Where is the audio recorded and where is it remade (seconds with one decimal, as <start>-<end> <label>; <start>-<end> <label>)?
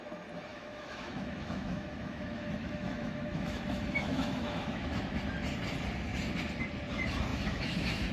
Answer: 0.0-0.5 recorded; 0.5-5.2 remade; 5.2-7.3 recorded; 7.3-8.1 remade